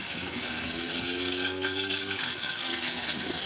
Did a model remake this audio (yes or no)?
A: yes